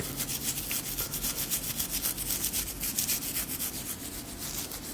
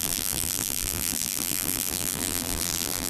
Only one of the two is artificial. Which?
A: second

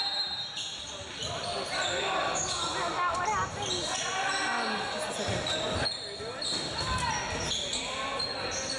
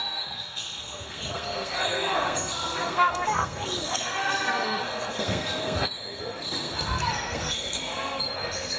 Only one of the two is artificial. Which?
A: second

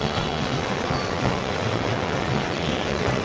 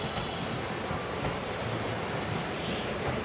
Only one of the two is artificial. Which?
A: first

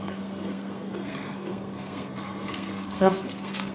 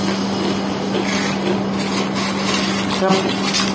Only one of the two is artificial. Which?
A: first